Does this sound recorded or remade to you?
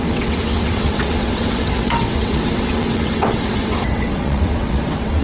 remade